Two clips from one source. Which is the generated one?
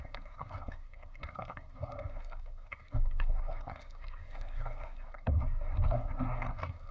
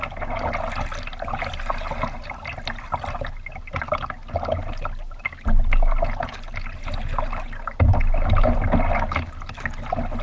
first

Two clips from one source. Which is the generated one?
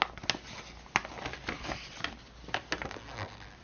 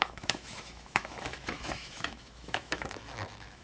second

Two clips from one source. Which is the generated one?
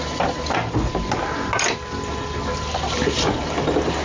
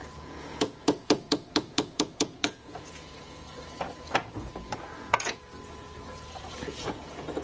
second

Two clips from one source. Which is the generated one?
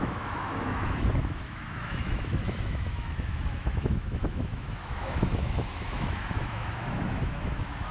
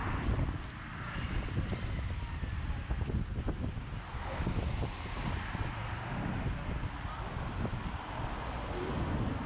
first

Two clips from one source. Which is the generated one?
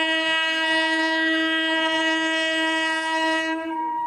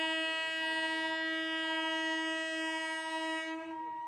first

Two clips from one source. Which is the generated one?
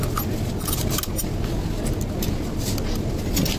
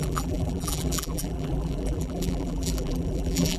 second